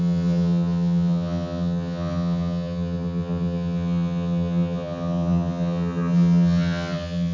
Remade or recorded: remade